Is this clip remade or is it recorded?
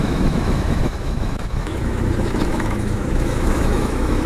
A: remade